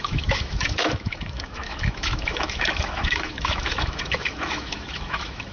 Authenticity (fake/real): fake